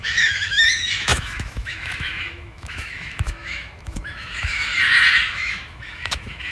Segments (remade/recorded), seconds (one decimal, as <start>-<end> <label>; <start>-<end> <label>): 0.0-4.7 remade; 4.7-5.3 recorded; 5.3-6.5 remade